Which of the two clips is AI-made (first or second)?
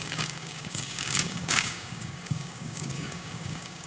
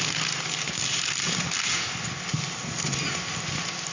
first